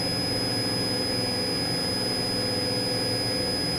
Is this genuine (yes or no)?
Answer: yes